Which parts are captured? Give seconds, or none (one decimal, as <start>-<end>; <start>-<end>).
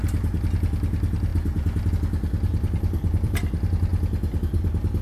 0.0-2.5; 3.4-5.0